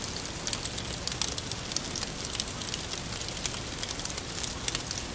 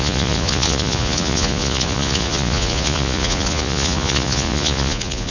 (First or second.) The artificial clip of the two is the second